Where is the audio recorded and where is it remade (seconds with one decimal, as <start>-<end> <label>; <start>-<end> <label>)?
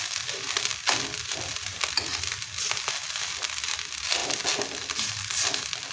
0.0-0.7 recorded; 0.7-2.6 remade; 2.6-4.2 recorded; 4.2-5.9 remade